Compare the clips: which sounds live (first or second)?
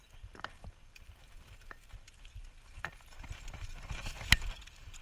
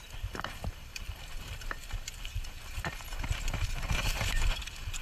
first